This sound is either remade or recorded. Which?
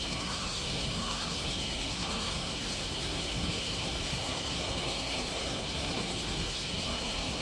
remade